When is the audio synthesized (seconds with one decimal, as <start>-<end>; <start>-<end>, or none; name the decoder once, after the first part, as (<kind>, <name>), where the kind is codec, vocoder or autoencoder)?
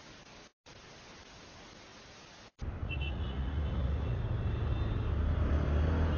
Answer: 2.8-4.2 (vocoder, Vocos)